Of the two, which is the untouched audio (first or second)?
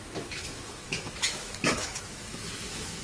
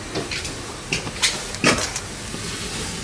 second